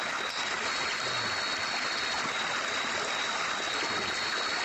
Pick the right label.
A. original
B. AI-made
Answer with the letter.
A